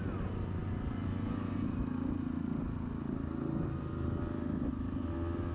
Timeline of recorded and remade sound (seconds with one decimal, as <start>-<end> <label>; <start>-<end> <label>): 0.0-5.5 recorded